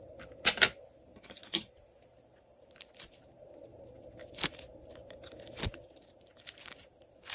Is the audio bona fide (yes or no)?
no